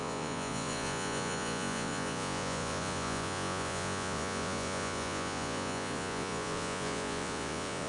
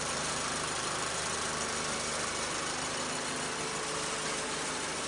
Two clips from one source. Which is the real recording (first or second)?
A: second